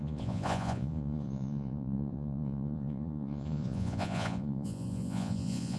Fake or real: fake